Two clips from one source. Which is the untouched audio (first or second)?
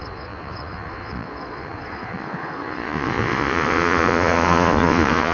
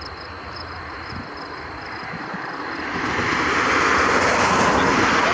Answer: second